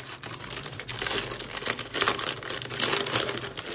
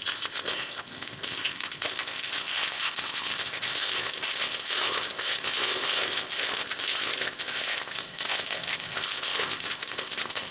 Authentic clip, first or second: first